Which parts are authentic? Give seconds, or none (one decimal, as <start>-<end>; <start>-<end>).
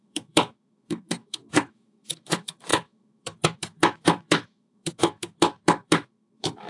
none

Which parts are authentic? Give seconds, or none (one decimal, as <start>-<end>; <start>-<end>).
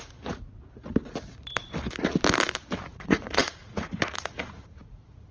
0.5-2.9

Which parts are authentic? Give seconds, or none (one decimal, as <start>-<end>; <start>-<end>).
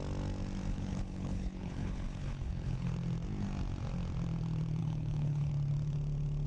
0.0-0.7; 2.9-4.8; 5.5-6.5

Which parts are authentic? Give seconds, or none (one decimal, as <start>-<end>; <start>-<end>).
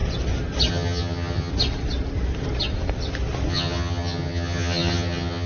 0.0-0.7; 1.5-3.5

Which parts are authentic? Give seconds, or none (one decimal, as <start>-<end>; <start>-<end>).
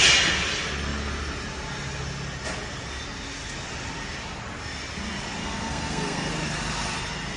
0.0-5.4; 6.3-7.4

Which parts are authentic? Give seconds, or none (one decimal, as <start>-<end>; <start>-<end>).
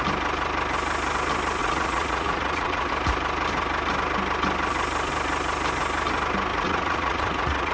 0.0-1.6; 2.9-6.5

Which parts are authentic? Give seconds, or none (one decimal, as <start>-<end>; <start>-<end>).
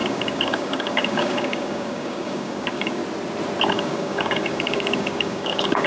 3.0-3.7